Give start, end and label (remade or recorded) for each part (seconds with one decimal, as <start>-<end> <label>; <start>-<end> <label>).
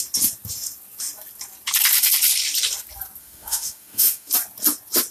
0.0-3.2 recorded; 3.2-4.3 remade; 4.3-5.1 recorded